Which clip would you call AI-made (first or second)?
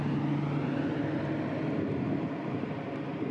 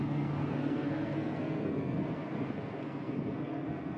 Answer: second